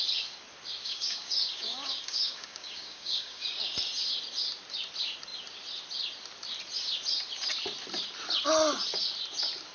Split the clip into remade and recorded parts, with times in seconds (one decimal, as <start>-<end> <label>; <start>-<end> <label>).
0.0-0.8 recorded; 0.8-3.6 remade; 3.6-9.7 recorded